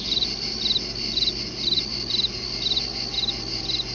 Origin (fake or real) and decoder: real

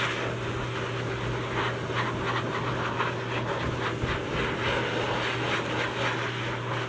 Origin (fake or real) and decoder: real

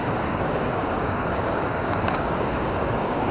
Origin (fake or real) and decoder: fake, codec, DAC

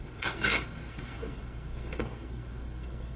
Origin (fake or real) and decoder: fake, codec, SNAC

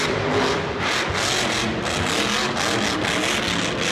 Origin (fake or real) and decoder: real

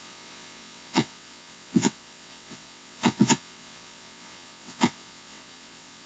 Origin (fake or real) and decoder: fake, vocoder, WaveNeXt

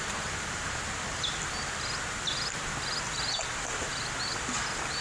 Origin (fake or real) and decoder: real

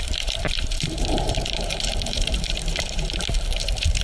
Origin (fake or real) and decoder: fake, vocoder, BigVGAN v2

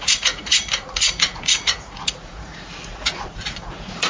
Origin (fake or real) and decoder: fake, vocoder, Vocos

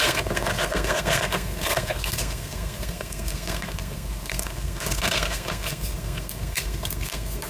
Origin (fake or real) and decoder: fake, codec, SNAC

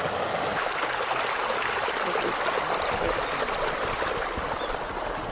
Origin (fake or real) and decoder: real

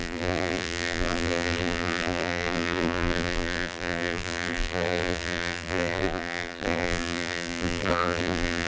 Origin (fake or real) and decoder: fake, vocoder, BigVGAN v2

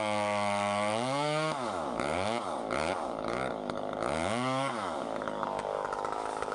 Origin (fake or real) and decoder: fake, codec, DAC